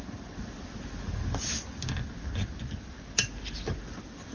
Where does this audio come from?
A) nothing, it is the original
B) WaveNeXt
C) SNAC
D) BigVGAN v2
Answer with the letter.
A